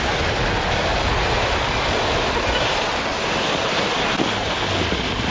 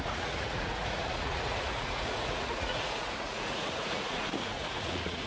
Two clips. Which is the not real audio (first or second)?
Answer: second